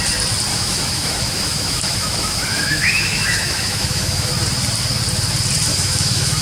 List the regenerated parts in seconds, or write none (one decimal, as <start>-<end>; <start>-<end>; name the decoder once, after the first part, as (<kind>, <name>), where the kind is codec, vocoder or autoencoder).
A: 0.5-4.3 (autoencoder, DAC-VAE); 5.7-6.4